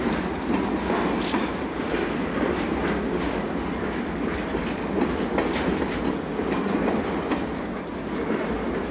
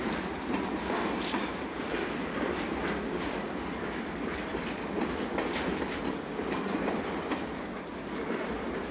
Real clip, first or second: first